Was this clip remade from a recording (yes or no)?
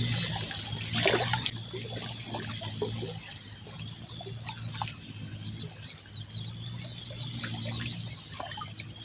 yes